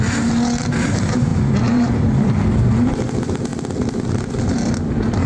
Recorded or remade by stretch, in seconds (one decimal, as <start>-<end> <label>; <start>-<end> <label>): 0.0-5.3 recorded